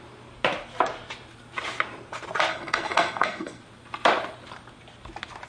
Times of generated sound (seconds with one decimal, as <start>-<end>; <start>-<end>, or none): 2.5-3.6